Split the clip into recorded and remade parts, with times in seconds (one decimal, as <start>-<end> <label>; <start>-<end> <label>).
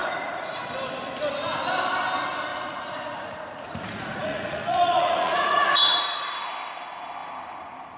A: 0.0-0.6 remade; 0.6-2.5 recorded; 2.5-6.0 remade; 6.0-8.0 recorded